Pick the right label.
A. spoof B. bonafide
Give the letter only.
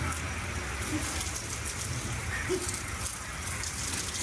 B